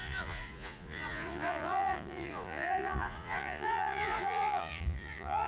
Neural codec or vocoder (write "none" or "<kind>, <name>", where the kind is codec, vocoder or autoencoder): vocoder, Vocos